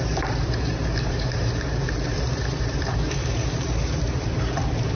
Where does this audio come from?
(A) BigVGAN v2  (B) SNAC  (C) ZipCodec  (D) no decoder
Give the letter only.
A